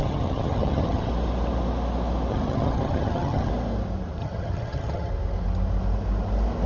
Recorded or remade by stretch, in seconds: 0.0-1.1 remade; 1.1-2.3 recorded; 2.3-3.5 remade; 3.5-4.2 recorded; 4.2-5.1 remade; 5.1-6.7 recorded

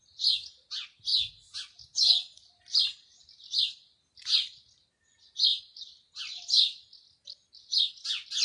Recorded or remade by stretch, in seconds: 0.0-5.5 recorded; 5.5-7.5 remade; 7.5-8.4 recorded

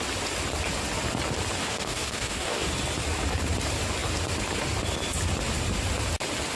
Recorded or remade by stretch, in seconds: 0.0-1.6 recorded; 1.6-2.7 remade; 2.7-6.6 recorded

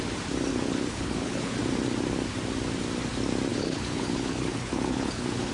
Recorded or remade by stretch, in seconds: 0.0-0.5 recorded; 0.5-1.6 remade; 1.6-3.5 recorded; 3.5-5.5 remade